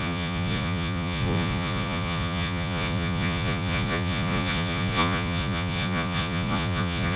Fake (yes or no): yes